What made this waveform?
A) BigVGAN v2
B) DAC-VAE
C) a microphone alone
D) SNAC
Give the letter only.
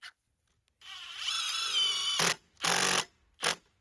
C